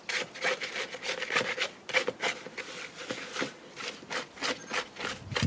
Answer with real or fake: real